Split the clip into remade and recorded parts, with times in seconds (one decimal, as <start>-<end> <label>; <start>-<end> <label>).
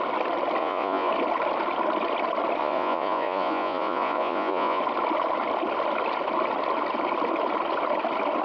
0.0-0.6 recorded; 0.6-1.1 remade; 1.1-2.6 recorded; 2.6-4.8 remade; 4.8-8.4 recorded